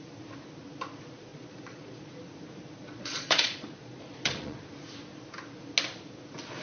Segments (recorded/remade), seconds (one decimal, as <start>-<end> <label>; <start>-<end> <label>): 0.0-1.3 recorded; 1.3-2.1 remade; 2.1-2.8 recorded; 2.8-4.6 remade; 4.6-6.6 recorded